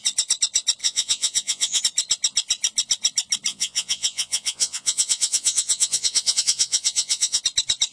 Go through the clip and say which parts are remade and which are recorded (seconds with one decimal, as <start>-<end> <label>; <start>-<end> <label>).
0.0-0.8 recorded; 0.8-1.8 remade; 1.8-3.5 recorded; 3.5-7.4 remade; 7.4-7.9 recorded